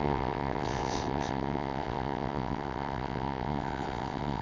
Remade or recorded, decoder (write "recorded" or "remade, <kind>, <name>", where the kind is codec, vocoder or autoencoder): remade, vocoder, WaveNeXt